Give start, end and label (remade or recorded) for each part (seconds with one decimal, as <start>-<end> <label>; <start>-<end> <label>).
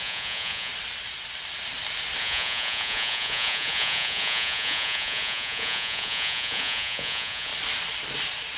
0.0-0.7 remade; 0.7-2.2 recorded; 2.2-7.5 remade; 7.5-8.6 recorded